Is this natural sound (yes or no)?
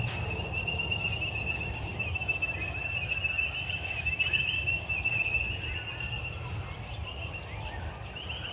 yes